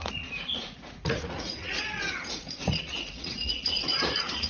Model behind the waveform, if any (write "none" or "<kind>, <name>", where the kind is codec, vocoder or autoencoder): vocoder, Vocos